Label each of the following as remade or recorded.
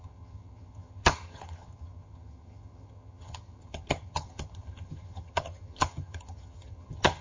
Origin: remade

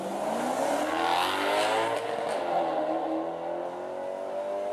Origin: recorded